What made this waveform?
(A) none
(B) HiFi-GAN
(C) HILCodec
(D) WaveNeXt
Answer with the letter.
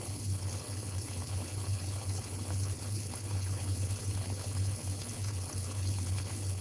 C